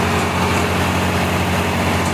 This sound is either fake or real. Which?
real